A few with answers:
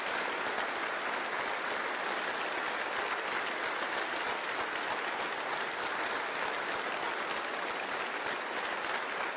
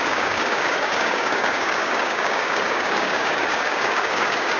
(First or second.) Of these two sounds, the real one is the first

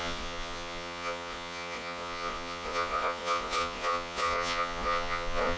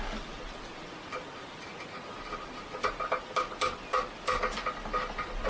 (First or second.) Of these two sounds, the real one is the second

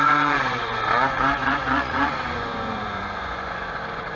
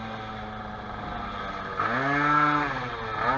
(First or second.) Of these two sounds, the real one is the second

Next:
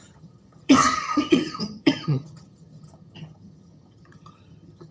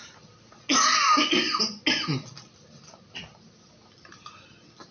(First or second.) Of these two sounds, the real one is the second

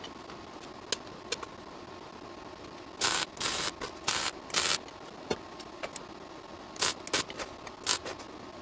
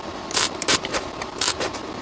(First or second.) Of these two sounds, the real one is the first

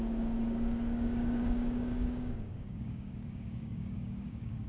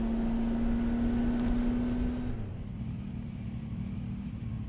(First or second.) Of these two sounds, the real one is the second